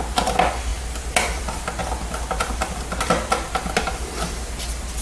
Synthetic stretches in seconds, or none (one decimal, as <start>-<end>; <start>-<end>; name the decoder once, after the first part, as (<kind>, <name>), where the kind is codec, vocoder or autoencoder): none